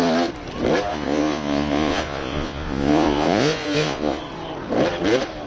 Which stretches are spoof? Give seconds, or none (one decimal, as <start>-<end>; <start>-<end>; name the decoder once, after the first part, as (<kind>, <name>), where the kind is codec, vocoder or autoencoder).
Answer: 0.9-4.2 (vocoder, Vocos)